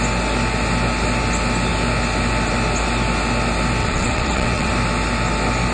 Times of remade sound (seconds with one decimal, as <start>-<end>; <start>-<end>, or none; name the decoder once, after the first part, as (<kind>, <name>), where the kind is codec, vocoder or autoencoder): 3.8-4.7 (vocoder, WaveNeXt)